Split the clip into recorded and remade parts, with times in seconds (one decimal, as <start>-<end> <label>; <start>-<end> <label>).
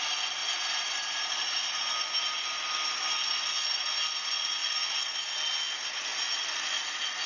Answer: 0.0-0.4 recorded; 0.4-2.3 remade; 2.3-4.6 recorded; 4.6-5.2 remade; 5.2-7.3 recorded